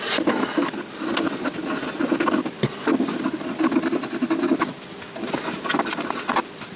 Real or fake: real